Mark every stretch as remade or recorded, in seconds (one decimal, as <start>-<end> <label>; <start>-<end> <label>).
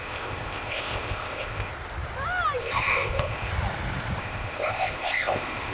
0.0-1.7 remade; 1.7-2.6 recorded; 2.6-3.5 remade; 3.5-4.2 recorded; 4.2-5.7 remade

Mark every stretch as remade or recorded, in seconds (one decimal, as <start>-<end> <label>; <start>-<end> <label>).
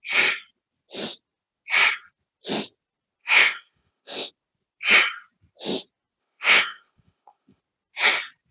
0.0-3.2 recorded; 3.2-4.3 remade; 4.3-6.2 recorded; 6.2-7.6 remade; 7.6-8.5 recorded